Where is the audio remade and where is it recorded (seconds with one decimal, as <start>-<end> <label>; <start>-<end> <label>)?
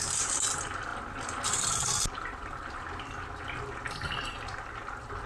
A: 0.0-5.3 recorded